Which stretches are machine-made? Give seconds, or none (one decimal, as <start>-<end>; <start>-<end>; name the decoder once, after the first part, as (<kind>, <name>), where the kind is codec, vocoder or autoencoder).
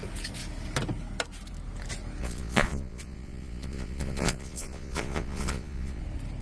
2.2-6.0 (vocoder, Vocos)